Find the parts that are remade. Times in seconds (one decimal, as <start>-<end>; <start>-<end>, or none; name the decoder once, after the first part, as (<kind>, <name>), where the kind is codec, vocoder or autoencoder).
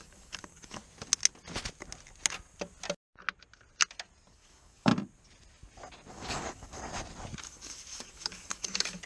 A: 0.0-0.8 (codec, DAC); 4.3-4.9; 6.1-6.9; 7.4-9.1